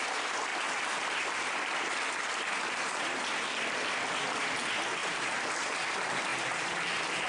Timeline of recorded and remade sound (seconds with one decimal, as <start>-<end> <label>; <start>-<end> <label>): 0.0-5.0 recorded; 5.0-5.5 remade; 5.5-7.3 recorded